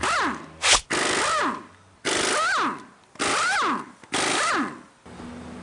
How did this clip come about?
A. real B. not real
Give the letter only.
A